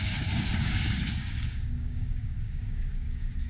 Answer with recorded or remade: remade